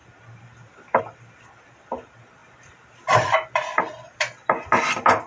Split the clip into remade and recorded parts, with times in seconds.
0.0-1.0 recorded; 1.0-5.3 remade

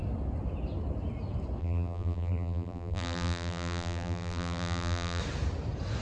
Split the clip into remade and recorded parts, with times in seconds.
0.0-1.6 recorded; 1.6-5.2 remade; 5.2-6.0 recorded

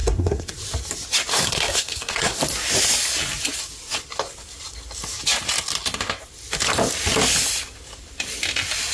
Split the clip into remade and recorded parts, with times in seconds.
0.0-0.5 remade; 0.5-1.3 recorded; 1.3-2.4 remade; 2.4-8.9 recorded

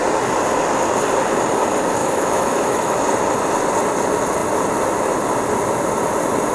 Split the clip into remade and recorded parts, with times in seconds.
0.0-2.0 recorded; 2.0-3.0 remade; 3.0-6.5 recorded